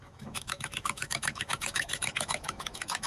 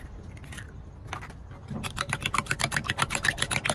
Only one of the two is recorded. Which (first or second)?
second